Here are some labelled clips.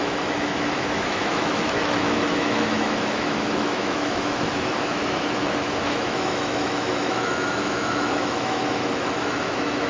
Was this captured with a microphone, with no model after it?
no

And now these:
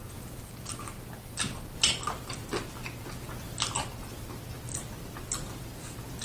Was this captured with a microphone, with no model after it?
yes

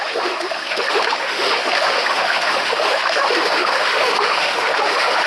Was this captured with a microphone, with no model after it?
no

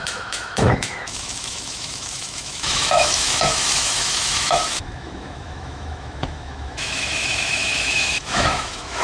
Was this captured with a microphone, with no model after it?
no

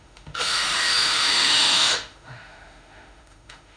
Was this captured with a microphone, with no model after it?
no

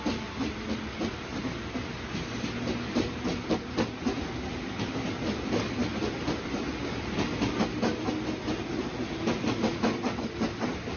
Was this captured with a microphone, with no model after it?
yes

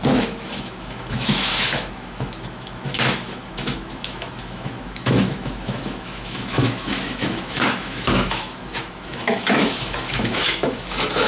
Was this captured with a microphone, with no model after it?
no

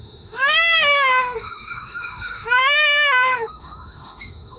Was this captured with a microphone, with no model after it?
no